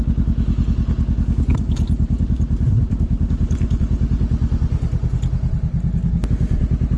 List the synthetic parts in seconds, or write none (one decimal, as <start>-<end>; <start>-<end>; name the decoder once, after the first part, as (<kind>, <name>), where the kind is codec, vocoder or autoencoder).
1.5-3.8 (vocoder, BigVGAN v2)